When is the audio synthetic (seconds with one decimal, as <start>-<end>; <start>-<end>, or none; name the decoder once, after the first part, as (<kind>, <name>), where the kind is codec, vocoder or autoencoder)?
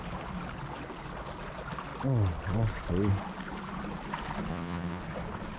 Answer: 4.5-5.0 (vocoder, Vocos)